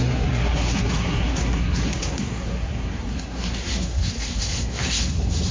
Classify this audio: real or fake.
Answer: fake